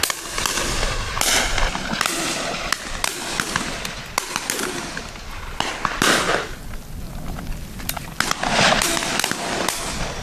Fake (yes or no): no